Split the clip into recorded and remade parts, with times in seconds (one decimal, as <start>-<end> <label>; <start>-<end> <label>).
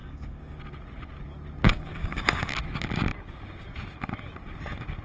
0.0-0.6 remade; 0.6-1.7 recorded; 1.7-2.5 remade; 2.5-5.0 recorded